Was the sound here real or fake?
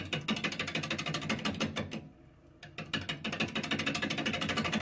real